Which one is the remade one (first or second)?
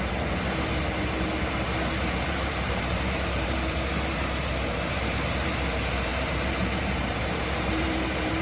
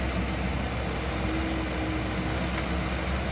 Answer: first